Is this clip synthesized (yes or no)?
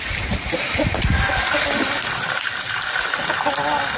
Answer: no